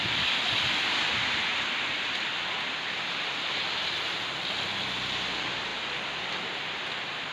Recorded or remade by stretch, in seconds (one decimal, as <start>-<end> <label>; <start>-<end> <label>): 0.0-5.7 remade; 5.7-6.5 recorded; 6.5-7.3 remade